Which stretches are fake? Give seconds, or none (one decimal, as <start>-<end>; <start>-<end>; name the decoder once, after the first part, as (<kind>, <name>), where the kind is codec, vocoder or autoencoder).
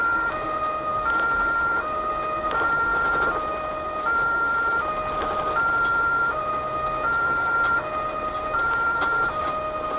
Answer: none